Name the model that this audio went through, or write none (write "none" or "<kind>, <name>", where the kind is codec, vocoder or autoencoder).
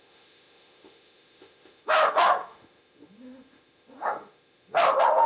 autoencoder, DAC-VAE